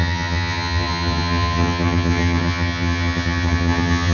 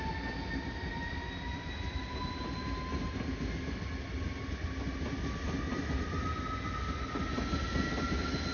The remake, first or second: first